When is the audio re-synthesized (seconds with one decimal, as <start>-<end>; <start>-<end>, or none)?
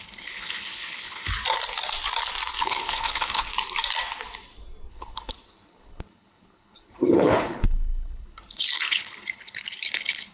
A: 0.0-1.3; 2.6-3.5; 4.9-10.3